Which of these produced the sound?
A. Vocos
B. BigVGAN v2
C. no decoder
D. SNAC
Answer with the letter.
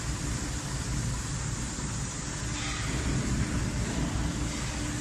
C